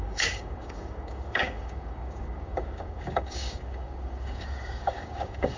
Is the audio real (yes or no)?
no